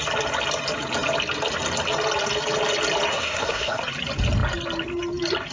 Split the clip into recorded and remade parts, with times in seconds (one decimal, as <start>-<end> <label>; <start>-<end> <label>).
0.0-3.1 recorded; 3.1-3.8 remade; 3.8-5.5 recorded